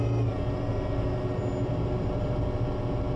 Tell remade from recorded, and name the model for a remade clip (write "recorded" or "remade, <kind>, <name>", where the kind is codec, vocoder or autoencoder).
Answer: recorded